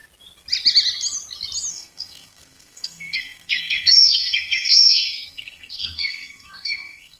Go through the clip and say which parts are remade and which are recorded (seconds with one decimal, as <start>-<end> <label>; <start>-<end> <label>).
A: 0.0-1.7 recorded; 1.7-7.2 remade